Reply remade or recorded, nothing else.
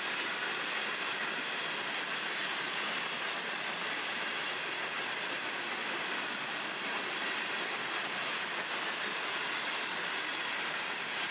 remade